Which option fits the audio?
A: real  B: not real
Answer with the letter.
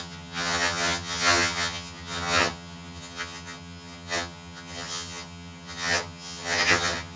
B